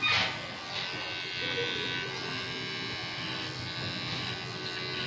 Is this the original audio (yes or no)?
yes